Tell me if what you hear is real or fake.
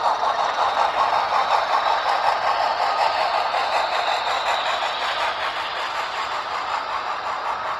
real